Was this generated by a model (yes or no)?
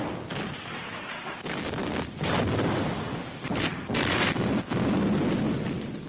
no